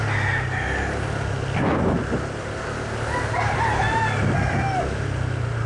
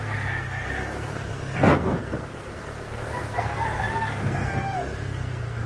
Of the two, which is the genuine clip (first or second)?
first